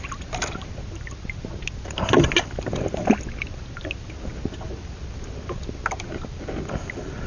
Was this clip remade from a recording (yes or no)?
no